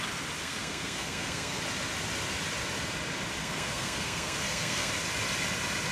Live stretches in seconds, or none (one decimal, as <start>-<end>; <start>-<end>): 0.0-0.4; 1.6-3.4; 4.9-5.9